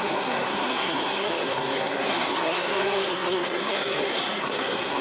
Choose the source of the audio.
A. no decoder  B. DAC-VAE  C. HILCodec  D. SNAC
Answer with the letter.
D